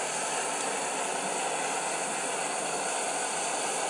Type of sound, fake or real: real